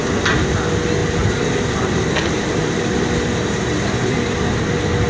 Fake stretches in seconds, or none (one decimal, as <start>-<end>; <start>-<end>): none

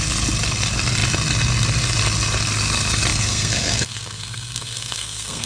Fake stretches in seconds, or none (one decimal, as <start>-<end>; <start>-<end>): 3.1-5.5

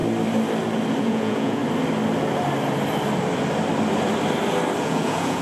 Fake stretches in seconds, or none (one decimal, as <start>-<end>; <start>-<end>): 1.0-1.6; 4.8-5.4

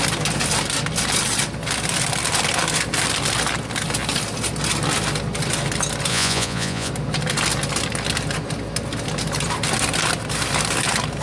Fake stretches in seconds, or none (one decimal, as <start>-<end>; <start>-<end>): 6.1-6.9

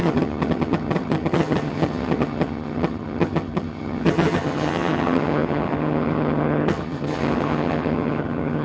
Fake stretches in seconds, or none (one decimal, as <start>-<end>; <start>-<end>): 0.0-8.6